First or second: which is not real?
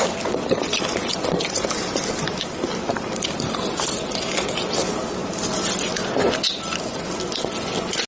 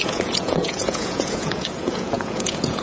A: second